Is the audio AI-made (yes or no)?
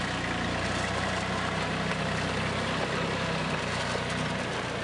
no